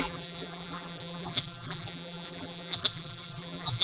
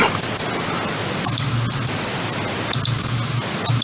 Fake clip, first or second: first